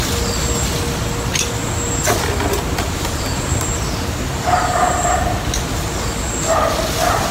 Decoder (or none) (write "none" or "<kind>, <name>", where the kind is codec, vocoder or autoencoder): none